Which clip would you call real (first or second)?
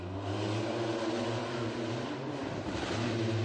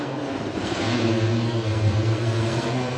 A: first